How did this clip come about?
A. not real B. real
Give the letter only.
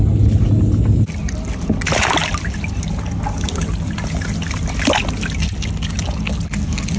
B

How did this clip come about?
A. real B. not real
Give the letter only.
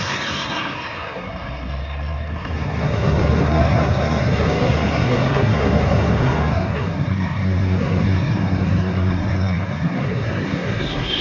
B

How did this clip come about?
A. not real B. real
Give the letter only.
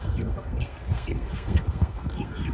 A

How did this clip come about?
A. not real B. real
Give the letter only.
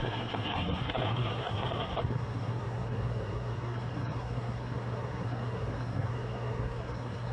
A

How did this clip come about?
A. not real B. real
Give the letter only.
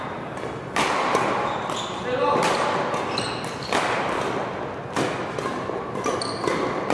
B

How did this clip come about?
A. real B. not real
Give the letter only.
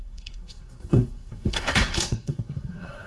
B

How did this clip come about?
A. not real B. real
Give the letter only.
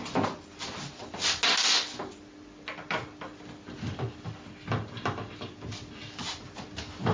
B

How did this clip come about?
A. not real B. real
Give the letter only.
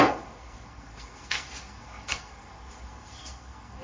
A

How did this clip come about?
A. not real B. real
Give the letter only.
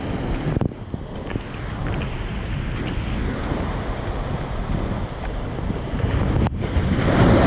B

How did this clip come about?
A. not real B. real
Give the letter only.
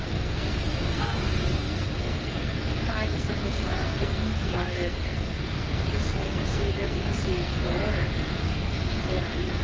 A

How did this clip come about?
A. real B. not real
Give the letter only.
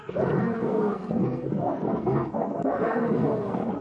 B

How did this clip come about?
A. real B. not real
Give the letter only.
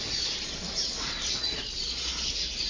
A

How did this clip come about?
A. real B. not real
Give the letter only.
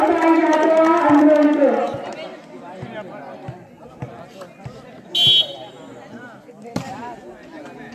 A